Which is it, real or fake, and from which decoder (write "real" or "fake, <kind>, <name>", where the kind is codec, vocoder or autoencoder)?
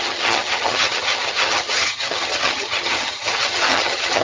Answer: fake, vocoder, HiFi-GAN